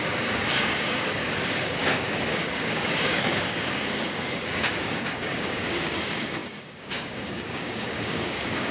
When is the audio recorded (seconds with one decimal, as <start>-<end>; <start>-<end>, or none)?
none